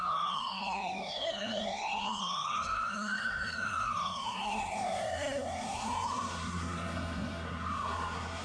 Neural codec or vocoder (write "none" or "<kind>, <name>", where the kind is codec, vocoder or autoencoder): codec, SNAC